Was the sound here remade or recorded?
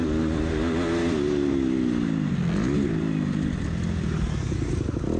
recorded